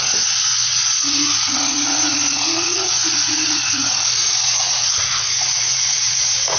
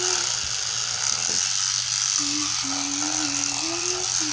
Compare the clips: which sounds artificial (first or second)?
first